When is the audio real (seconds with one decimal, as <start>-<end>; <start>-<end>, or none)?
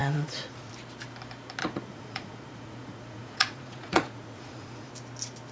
0.7-1.6; 4.9-5.5